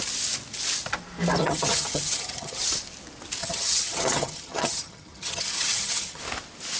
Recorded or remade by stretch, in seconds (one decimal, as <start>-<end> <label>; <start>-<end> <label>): 0.0-1.4 recorded; 1.4-2.6 remade; 2.6-3.4 recorded; 3.4-6.2 remade; 6.2-6.8 recorded

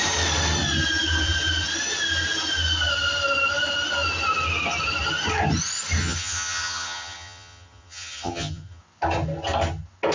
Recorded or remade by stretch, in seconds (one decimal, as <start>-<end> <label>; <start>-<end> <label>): 0.0-6.0 recorded; 6.0-8.8 remade; 8.8-10.1 recorded